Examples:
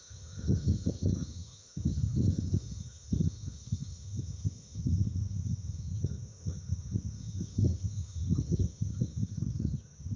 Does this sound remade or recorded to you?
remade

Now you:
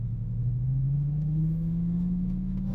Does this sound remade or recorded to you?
remade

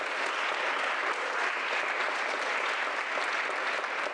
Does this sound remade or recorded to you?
recorded